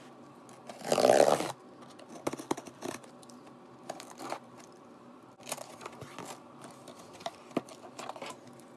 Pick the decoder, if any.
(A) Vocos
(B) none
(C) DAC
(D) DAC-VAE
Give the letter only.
B